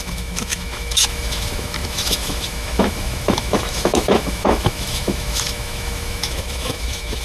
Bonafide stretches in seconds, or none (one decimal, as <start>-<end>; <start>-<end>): none